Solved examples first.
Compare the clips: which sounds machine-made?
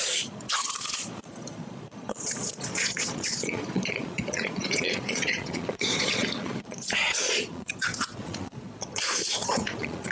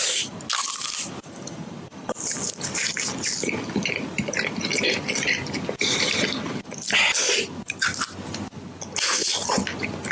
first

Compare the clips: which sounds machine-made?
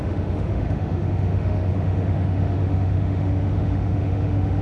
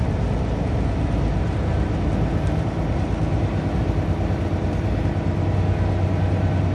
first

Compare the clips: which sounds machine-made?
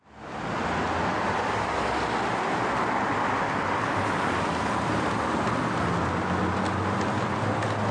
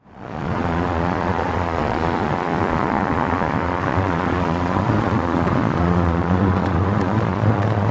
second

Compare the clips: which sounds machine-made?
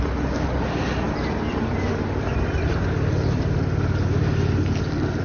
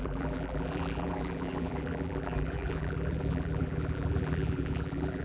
second